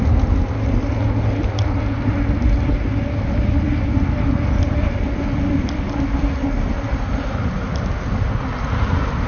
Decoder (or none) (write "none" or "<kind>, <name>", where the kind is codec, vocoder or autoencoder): none